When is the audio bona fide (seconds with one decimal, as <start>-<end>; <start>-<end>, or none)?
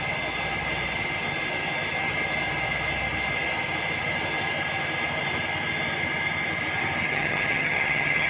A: 0.0-7.1